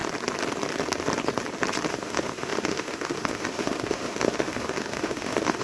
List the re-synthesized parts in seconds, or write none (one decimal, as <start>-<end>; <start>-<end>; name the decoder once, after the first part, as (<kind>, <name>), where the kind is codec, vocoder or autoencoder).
1.9-5.6 (autoencoder, DAC-VAE)